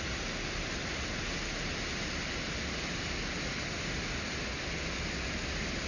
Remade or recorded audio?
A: recorded